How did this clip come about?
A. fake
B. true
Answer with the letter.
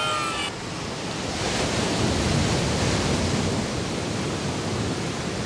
B